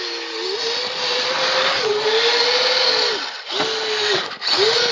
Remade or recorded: recorded